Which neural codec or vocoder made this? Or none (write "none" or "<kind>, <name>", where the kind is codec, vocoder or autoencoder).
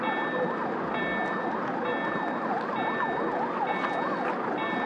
none